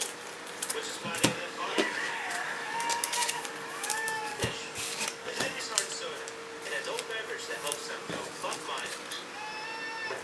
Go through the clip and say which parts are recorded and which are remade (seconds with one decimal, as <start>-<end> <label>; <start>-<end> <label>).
0.0-1.0 recorded; 1.0-5.6 remade; 5.6-7.8 recorded; 7.8-8.6 remade; 8.6-10.2 recorded